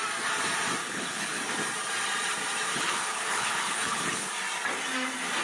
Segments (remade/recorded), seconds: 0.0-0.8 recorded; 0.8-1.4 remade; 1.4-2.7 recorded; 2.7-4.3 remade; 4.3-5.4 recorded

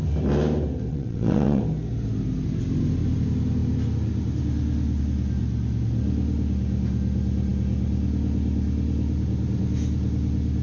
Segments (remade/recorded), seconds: 0.0-0.9 recorded; 0.9-1.6 remade; 1.6-10.6 recorded

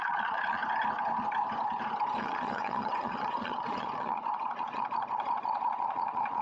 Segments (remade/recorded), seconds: 0.0-0.6 remade; 0.6-2.2 recorded; 2.2-6.4 remade

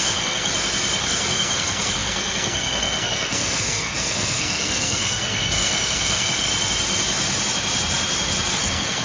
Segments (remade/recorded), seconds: 0.0-0.5 remade; 0.5-1.0 recorded; 1.0-6.5 remade; 6.5-8.5 recorded; 8.5-9.0 remade

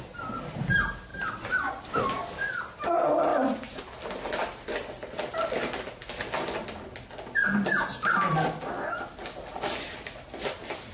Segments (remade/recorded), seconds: 0.0-1.1 recorded; 1.1-2.8 remade; 2.8-3.3 recorded; 3.3-3.9 remade; 3.9-10.9 recorded